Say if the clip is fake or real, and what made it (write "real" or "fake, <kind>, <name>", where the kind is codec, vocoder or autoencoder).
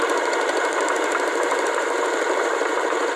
fake, vocoder, BigVGAN v2